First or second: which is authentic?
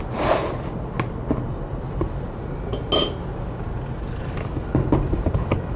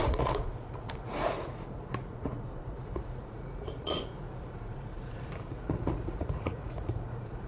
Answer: first